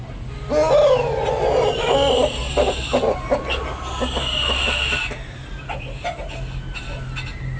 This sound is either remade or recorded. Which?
recorded